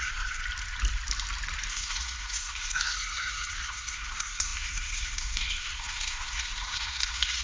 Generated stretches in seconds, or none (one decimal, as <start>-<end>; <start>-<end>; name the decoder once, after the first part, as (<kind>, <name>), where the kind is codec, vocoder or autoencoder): 0.0-0.4 (codec, SNAC); 1.7-7.4